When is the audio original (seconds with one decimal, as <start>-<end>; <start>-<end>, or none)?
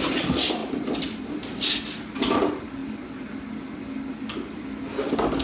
0.0-5.4